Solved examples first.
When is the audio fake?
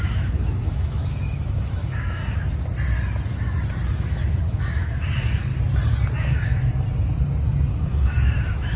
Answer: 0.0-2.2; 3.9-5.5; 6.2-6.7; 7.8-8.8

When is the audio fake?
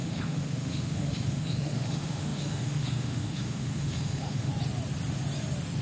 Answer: 0.0-4.5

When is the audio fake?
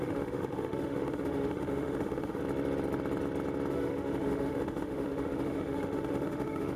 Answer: 0.0-2.4; 3.7-6.8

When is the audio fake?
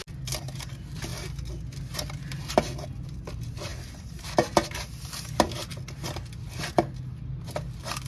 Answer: none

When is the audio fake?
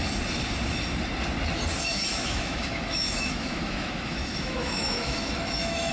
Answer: 2.1-5.9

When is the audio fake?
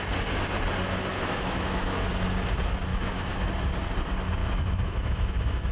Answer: 1.1-2.1; 2.9-3.5; 4.4-5.7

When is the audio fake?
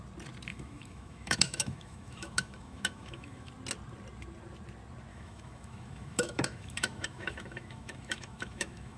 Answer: 0.5-3.5; 5.1-9.0